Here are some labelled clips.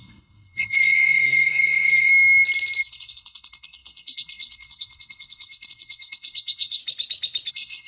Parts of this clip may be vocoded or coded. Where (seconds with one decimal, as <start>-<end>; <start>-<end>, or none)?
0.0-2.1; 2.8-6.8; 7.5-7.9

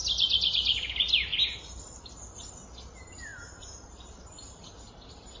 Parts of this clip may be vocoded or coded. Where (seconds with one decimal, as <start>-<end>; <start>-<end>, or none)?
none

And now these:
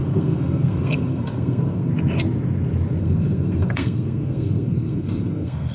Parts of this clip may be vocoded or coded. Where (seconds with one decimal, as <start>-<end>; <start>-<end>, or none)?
0.0-1.9; 3.0-5.7

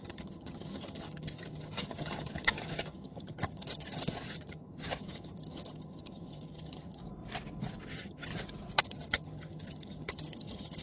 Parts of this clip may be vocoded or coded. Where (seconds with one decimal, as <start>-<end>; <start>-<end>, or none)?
0.0-7.0; 7.9-8.3; 8.8-10.8

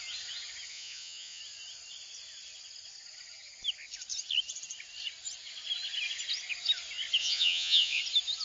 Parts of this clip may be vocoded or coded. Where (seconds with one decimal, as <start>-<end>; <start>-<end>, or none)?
0.7-1.4; 7.2-8.0

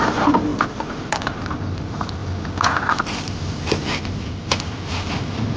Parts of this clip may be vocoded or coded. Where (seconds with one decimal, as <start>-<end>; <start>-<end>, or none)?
0.0-2.2; 2.9-5.6

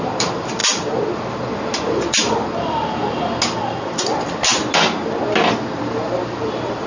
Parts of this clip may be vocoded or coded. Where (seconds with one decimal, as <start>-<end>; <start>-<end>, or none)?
0.0-3.0; 3.7-4.5; 5.8-6.9

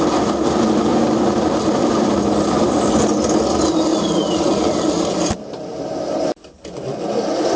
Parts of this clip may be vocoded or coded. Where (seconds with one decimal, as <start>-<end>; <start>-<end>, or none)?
0.9-2.8; 3.9-6.3